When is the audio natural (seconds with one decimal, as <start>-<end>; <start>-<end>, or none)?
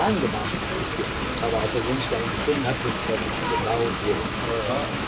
0.4-1.4; 3.0-3.6